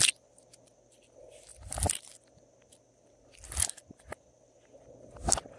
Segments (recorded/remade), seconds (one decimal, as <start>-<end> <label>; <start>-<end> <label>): 0.0-5.6 recorded